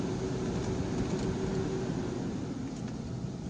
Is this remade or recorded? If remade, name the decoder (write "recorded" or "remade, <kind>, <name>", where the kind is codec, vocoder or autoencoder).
recorded